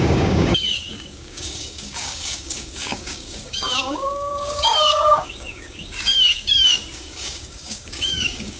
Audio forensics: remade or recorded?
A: remade